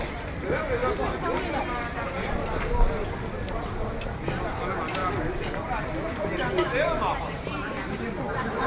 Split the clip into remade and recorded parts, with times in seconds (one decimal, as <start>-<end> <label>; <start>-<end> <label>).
0.0-5.0 recorded; 5.0-8.7 remade